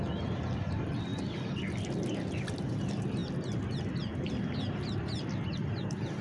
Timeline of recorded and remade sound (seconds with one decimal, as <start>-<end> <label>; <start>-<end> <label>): 0.0-1.1 remade; 1.1-2.5 recorded; 2.5-3.2 remade; 3.2-3.9 recorded; 3.9-6.2 remade